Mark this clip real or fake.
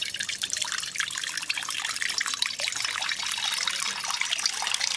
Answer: fake